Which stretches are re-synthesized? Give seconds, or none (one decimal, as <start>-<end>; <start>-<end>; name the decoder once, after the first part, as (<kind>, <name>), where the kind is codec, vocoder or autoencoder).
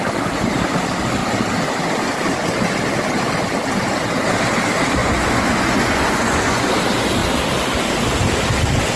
5.0-6.7 (vocoder, Vocos)